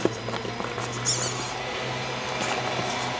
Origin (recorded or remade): recorded